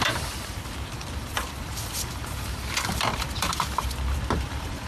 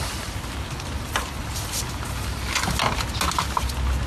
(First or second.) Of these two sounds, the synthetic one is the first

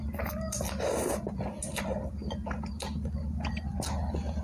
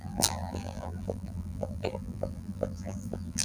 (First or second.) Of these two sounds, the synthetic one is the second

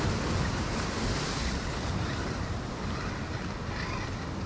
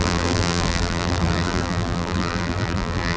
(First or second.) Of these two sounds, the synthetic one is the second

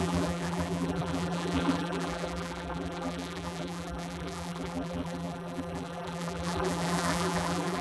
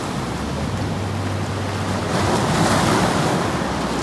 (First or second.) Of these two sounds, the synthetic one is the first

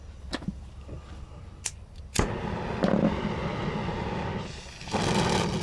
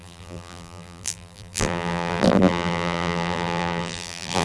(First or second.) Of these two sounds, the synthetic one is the second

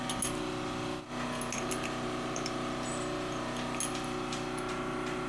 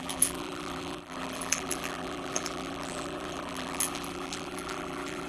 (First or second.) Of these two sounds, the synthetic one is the second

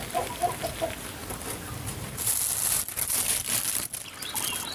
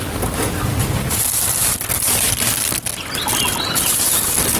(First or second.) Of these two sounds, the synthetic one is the first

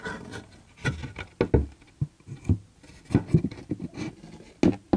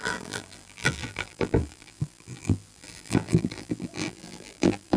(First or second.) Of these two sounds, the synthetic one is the second